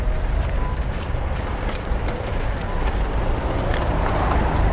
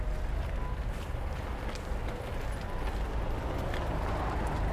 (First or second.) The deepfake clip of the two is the first